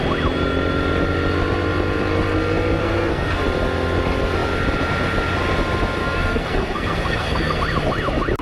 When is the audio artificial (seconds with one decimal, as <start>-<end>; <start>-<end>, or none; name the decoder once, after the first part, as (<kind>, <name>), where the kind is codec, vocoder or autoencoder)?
2.8-3.4 (codec, SNAC); 6.0-7.6